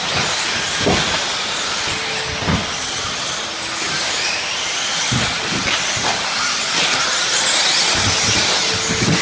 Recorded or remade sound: recorded